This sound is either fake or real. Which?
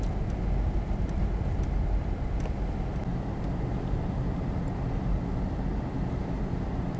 real